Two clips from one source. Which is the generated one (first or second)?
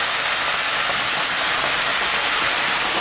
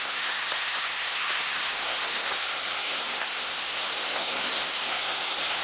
second